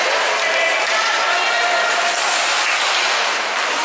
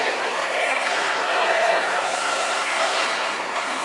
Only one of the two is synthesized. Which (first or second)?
second